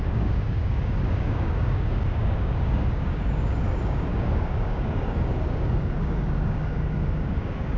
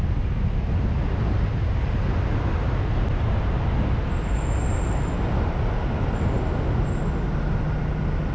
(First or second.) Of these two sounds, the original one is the second